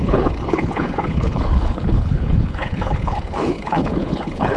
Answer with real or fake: fake